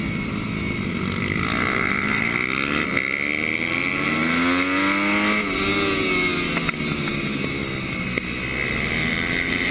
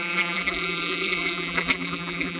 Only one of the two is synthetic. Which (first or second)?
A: second